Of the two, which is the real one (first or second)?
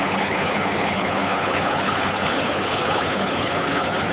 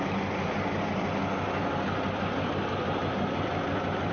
second